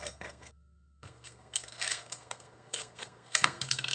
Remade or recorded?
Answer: remade